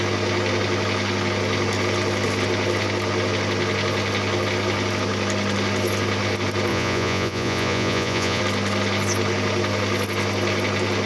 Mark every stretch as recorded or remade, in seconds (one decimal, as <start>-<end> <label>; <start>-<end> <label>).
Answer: 0.0-6.7 recorded; 6.7-8.4 remade; 8.4-11.1 recorded